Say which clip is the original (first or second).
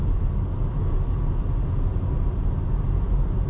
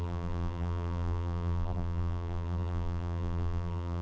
first